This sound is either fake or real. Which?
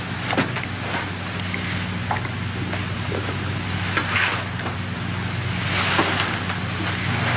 real